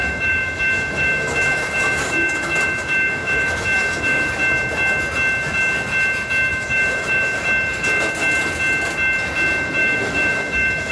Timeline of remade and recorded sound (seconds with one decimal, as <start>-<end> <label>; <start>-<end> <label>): 0.0-4.3 remade; 4.3-6.5 recorded; 6.5-7.4 remade; 7.4-9.8 recorded; 9.8-10.9 remade